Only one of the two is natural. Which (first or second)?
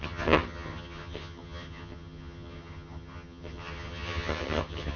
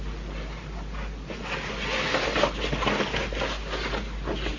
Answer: second